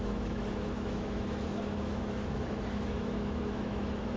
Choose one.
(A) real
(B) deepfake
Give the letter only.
B